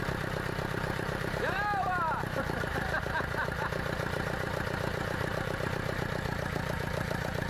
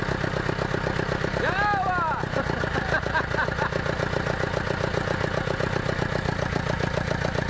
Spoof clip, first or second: first